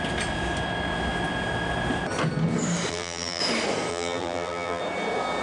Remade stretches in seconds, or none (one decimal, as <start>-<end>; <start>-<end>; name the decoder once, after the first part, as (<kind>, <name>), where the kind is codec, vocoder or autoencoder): 2.9-3.4 (vocoder, BigVGAN v2); 3.9-4.8